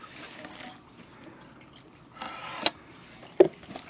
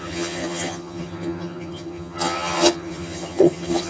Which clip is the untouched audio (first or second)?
first